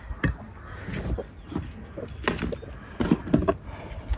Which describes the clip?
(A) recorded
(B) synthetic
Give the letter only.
A